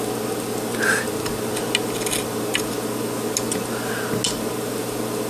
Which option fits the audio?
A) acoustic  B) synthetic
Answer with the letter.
A